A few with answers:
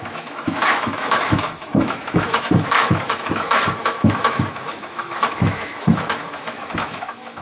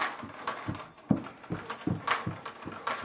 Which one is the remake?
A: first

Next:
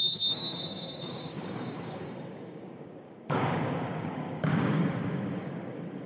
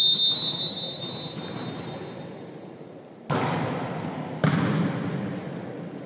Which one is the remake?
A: first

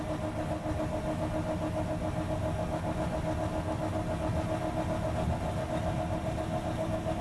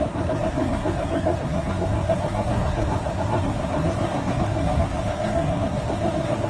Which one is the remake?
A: second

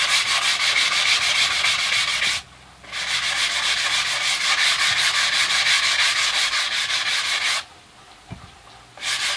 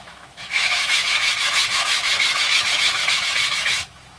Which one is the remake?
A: second